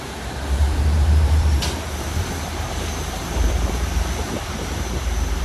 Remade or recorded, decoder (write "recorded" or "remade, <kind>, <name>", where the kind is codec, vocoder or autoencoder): remade, vocoder, BigVGAN v2